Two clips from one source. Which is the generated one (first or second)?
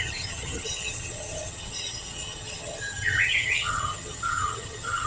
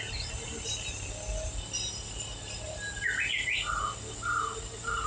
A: first